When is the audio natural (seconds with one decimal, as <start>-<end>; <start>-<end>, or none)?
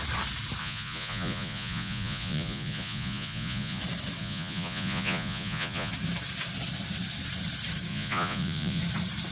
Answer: 0.0-0.6; 3.8-4.2; 5.9-7.9; 8.8-9.3